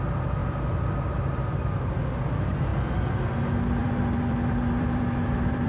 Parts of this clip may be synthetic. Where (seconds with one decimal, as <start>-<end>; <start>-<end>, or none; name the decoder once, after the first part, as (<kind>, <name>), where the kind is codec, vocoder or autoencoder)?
3.8-5.7 (vocoder, BigVGAN v2)